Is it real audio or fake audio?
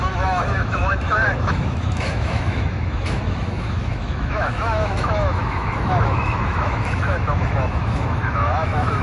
fake